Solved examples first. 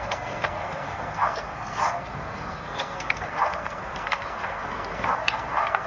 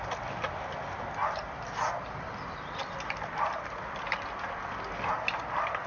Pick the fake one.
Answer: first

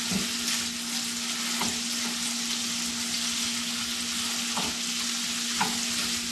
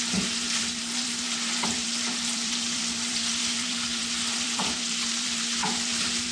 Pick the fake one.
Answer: second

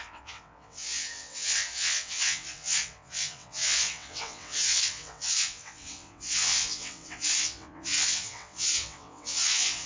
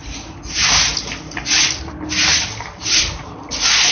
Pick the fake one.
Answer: first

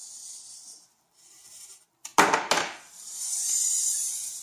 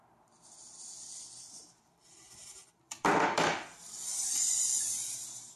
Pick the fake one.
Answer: second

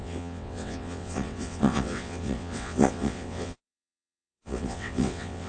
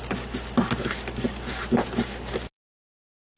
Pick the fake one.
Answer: first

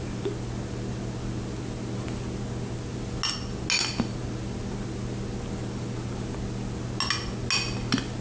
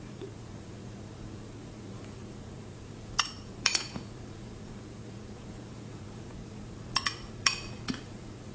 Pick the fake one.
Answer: second